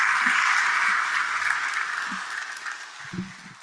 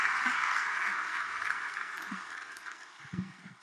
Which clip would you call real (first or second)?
first